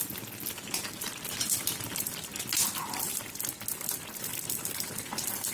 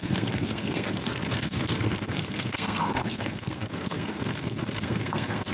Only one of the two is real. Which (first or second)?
first